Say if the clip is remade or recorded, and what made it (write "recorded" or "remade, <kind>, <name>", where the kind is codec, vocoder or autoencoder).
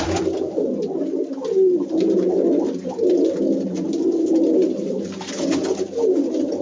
recorded